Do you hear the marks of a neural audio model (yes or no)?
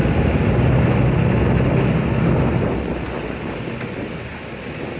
no